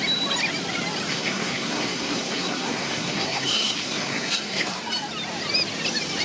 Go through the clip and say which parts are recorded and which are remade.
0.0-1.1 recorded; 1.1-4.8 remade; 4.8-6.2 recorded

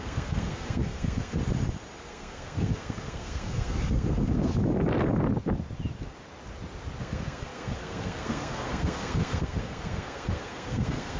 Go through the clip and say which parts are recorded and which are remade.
0.0-1.4 remade; 1.4-2.0 recorded; 2.0-4.5 remade; 4.5-7.0 recorded; 7.0-11.2 remade